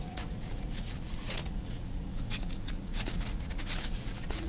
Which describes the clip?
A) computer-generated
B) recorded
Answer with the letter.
A